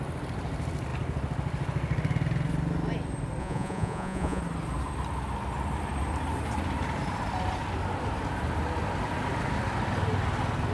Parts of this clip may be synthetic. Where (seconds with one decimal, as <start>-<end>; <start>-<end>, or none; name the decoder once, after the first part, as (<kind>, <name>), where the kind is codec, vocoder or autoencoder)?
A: 3.4-4.4 (vocoder, Vocos)